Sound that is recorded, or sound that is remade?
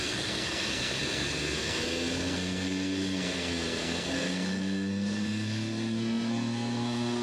remade